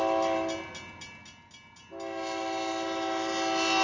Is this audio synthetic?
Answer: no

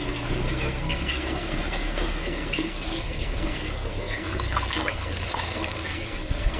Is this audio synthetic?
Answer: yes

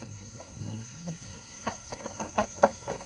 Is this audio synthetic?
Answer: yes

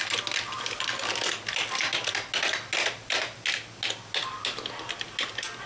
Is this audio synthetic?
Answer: no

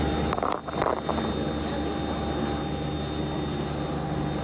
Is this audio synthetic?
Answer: no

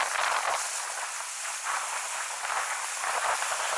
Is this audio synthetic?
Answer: no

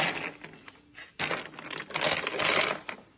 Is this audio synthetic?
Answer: no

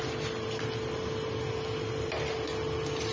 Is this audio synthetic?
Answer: no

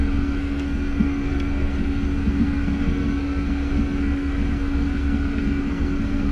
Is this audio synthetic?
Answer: yes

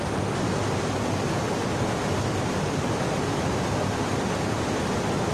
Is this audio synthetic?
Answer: no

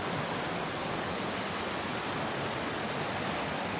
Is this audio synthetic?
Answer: no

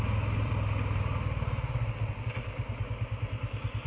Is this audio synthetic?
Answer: no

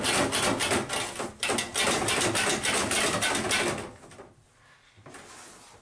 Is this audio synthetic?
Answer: no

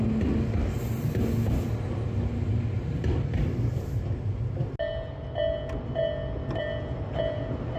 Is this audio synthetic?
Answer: no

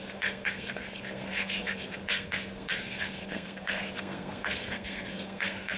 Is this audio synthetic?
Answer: yes